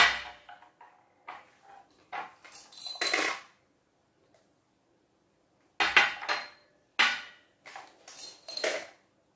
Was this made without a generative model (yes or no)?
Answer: yes